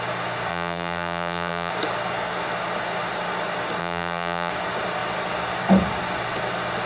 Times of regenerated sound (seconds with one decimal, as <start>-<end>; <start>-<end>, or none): 0.5-1.7; 3.8-4.5